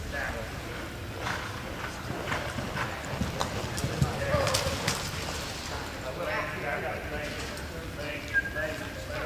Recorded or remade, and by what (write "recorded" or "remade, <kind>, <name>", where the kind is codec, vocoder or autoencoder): recorded